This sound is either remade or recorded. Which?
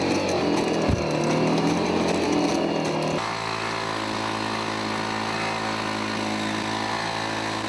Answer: recorded